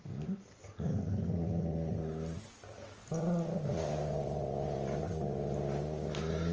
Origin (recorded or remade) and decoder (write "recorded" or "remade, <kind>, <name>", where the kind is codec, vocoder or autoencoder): recorded